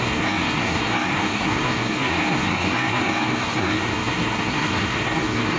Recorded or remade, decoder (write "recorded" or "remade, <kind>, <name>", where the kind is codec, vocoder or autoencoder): remade, codec, SNAC